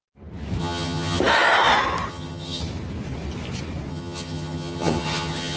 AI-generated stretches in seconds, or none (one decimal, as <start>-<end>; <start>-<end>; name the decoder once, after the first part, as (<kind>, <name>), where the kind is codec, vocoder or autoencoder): 0.6-1.2 (vocoder, HiFi-GAN); 2.1-2.6; 3.9-5.6